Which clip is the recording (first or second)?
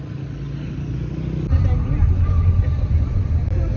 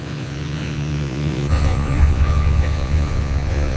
first